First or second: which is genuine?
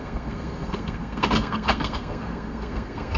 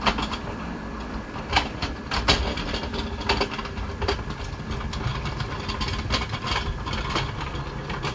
second